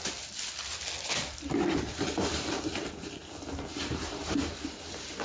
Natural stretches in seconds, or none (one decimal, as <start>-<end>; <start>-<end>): 0.0-1.9; 3.2-4.0